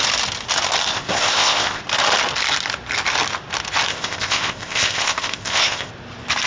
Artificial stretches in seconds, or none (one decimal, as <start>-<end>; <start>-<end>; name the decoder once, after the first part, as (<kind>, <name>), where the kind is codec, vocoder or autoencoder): 0.9-1.8 (codec, ZipCodec); 3.9-5.9